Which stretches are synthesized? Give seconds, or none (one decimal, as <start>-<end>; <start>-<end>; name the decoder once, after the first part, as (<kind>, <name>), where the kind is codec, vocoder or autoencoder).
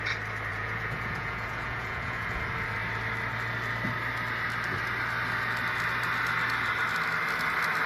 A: 0.5-2.4 (vocoder, Vocos)